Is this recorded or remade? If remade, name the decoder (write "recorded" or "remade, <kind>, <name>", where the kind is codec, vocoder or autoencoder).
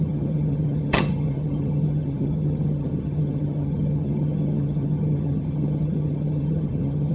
remade, vocoder, HiFi-GAN